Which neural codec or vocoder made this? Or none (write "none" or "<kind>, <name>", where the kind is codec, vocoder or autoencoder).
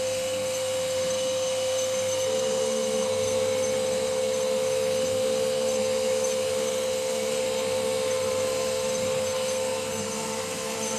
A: codec, SNAC